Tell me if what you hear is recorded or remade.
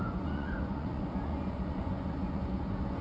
remade